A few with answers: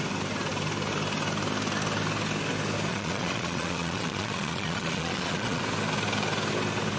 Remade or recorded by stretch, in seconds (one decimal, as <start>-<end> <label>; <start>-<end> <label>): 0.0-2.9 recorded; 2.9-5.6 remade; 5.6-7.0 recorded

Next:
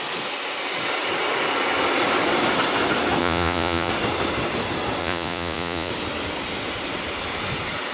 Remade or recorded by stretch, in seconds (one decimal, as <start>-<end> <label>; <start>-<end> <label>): 0.0-3.2 recorded; 3.2-3.9 remade; 3.9-5.0 recorded; 5.0-5.9 remade; 5.9-7.9 recorded

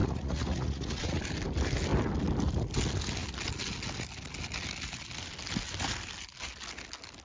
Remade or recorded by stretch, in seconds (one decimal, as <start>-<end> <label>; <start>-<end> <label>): 0.0-1.2 remade; 1.2-7.2 recorded

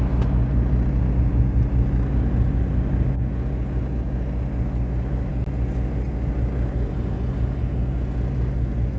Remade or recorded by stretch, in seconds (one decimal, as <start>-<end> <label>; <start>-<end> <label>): 0.0-9.0 recorded

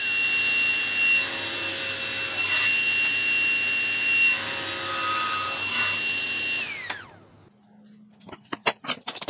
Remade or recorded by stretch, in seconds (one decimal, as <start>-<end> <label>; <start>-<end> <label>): 0.0-9.3 recorded

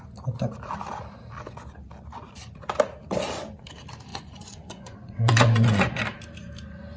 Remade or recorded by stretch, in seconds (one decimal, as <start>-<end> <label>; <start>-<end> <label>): 0.0-4.1 recorded; 4.1-6.0 remade; 6.0-7.0 recorded

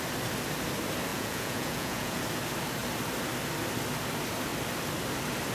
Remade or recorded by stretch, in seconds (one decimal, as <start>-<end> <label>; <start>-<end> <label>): 0.0-1.1 recorded; 1.1-2.2 remade; 2.2-5.5 recorded

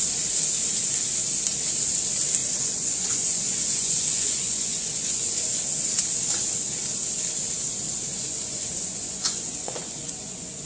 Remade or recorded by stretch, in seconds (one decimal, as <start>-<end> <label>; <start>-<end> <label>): 0.0-2.4 recorded; 2.4-5.6 remade; 5.6-8.1 recorded; 8.1-10.7 remade